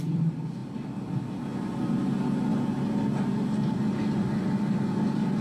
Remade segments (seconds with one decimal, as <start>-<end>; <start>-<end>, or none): none